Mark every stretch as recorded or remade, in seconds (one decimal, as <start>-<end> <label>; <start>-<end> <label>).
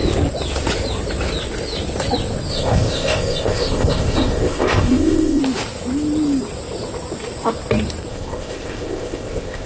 0.0-2.5 recorded; 2.5-5.4 remade; 5.4-8.1 recorded; 8.1-9.7 remade